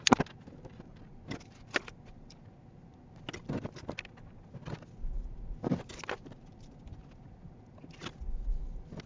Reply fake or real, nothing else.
real